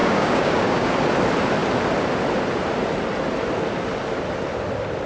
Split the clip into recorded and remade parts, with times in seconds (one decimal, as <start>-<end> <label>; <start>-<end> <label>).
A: 0.0-0.9 remade; 0.9-5.1 recorded

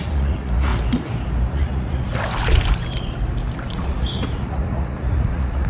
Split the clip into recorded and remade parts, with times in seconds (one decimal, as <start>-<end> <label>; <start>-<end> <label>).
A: 0.0-0.7 remade; 0.7-1.5 recorded; 1.5-2.1 remade; 2.1-3.7 recorded; 3.7-5.7 remade

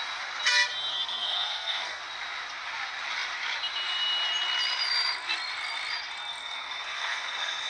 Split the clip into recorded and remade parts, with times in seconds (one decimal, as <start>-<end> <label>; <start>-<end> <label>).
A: 0.0-0.9 recorded; 0.9-2.0 remade; 2.0-6.4 recorded; 6.4-7.7 remade

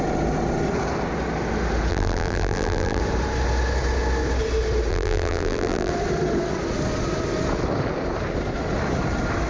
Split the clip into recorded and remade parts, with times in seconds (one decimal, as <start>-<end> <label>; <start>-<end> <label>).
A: 0.0-1.9 recorded; 1.9-3.0 remade; 3.0-4.9 recorded; 4.9-5.9 remade; 5.9-9.5 recorded

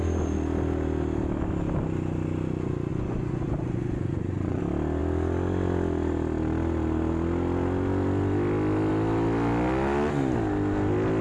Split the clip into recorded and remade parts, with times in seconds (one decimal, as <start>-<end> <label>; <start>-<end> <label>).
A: 0.0-2.9 recorded; 2.9-4.6 remade; 4.6-11.2 recorded

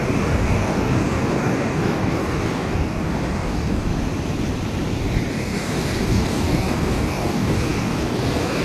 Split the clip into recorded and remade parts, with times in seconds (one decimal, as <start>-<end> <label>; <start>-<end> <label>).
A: 0.0-3.9 remade; 3.9-5.3 recorded; 5.3-8.6 remade